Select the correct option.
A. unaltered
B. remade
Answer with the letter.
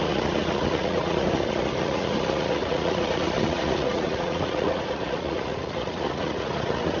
B